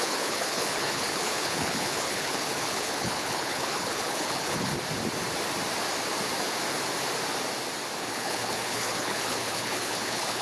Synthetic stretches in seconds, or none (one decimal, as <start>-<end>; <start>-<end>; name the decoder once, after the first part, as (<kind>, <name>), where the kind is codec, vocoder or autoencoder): 0.0-4.7 (codec, HILCodec); 8.0-10.4